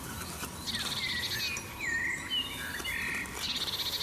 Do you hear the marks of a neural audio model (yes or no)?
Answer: no